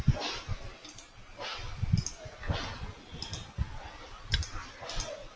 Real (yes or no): yes